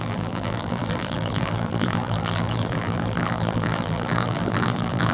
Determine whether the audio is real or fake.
fake